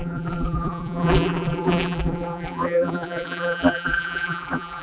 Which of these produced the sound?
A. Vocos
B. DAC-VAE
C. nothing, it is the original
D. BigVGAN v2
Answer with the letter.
D